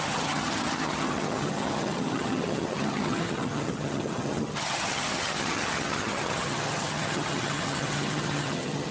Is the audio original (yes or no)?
no